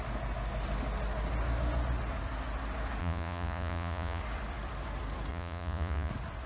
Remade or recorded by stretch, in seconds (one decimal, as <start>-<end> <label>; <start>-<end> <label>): 0.0-3.0 recorded; 3.0-4.2 remade; 4.2-5.3 recorded; 5.3-6.1 remade; 6.1-6.5 recorded